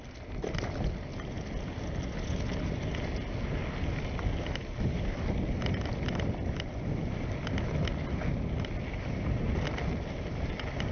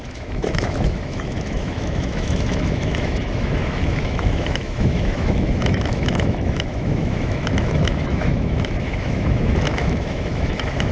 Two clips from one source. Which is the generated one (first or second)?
second